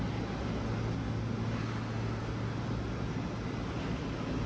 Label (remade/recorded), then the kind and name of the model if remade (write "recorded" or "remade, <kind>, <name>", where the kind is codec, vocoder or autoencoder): recorded